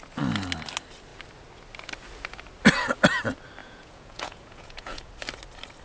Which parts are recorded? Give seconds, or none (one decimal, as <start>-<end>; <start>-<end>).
0.0-3.6; 5.1-5.8

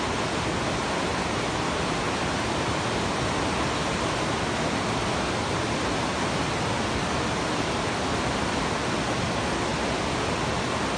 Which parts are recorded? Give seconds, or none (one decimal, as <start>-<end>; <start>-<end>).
0.0-11.0

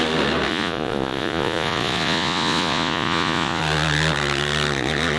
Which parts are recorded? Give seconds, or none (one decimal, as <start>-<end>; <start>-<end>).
0.0-0.5; 3.6-5.2

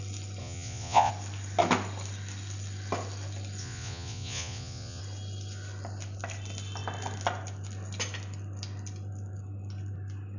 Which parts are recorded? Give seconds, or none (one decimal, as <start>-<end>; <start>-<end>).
0.0-0.4; 1.1-3.6; 5.0-10.4

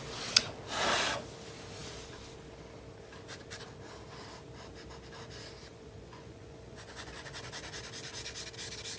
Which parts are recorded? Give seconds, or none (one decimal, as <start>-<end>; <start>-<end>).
0.0-5.7; 7.4-9.0